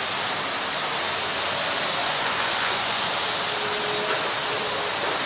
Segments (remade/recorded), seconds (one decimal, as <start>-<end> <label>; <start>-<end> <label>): 0.0-2.0 recorded; 2.0-3.1 remade; 3.1-5.3 recorded